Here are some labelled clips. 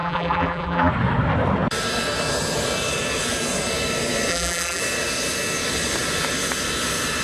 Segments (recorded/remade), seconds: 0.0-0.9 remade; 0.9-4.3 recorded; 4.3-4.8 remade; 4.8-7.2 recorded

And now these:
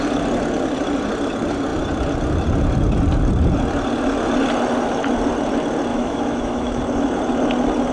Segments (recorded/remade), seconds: 0.0-5.9 recorded; 5.9-6.8 remade; 6.8-7.9 recorded

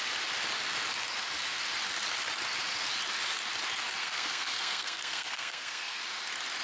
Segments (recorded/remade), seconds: 0.0-4.0 recorded; 4.0-6.0 remade; 6.0-6.6 recorded

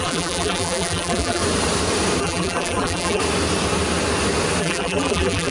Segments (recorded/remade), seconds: 0.0-1.4 remade; 1.4-2.2 recorded; 2.2-3.2 remade; 3.2-4.6 recorded; 4.6-5.5 remade

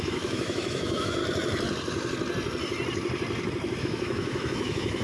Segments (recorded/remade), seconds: 0.0-1.2 remade; 1.2-3.8 recorded; 3.8-5.0 remade